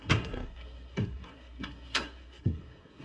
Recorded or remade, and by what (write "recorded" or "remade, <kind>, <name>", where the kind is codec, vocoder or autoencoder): remade, codec, SNAC